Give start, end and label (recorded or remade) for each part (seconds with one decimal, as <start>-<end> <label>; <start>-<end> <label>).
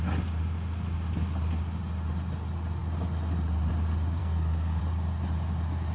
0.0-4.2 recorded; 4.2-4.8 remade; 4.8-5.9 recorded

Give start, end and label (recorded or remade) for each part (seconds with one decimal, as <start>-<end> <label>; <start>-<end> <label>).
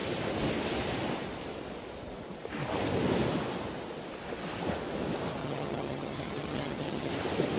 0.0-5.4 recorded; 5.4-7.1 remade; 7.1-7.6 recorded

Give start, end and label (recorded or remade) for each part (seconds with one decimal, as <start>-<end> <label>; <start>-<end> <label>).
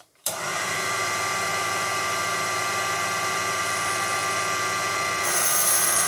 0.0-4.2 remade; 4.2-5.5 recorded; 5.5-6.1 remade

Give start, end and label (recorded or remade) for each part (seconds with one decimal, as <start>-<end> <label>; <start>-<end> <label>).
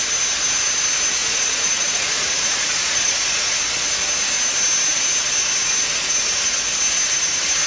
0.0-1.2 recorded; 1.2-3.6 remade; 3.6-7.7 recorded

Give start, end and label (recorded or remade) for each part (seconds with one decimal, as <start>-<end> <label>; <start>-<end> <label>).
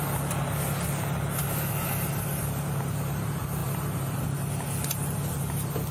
0.0-3.6 recorded; 3.6-4.5 remade; 4.5-5.9 recorded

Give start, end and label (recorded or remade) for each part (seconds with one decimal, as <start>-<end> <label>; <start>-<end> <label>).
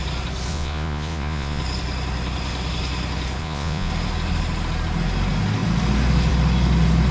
0.0-0.5 recorded; 0.5-1.6 remade; 1.6-3.4 recorded; 3.4-3.9 remade; 3.9-7.1 recorded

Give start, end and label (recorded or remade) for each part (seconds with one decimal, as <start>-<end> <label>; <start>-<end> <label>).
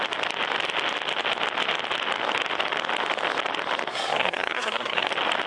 0.0-3.9 recorded; 3.9-5.1 remade; 5.1-5.5 recorded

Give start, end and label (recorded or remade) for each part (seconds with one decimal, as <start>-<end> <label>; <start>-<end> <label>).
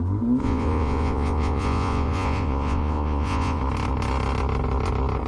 0.0-0.4 recorded; 0.4-3.6 remade; 3.6-5.3 recorded